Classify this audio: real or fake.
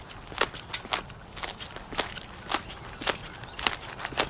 real